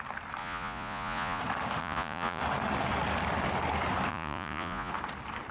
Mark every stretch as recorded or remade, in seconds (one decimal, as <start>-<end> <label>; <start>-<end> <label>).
0.0-0.4 recorded; 0.4-1.4 remade; 1.4-1.8 recorded; 1.8-2.4 remade; 2.4-4.1 recorded; 4.1-4.9 remade; 4.9-5.5 recorded